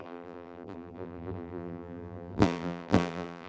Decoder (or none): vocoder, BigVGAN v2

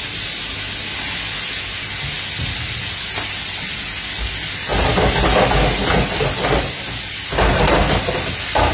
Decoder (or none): none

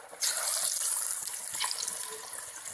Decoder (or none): none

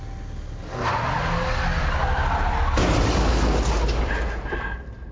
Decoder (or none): none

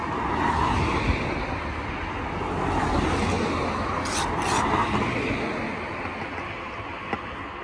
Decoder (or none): none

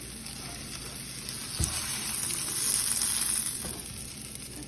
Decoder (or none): none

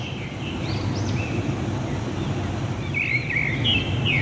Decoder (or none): none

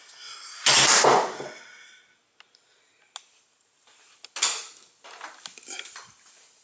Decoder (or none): none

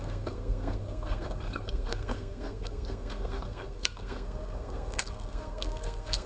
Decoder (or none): codec, SNAC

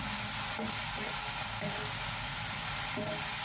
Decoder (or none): none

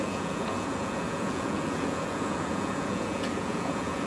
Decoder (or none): vocoder, Vocos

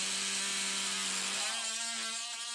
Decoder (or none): none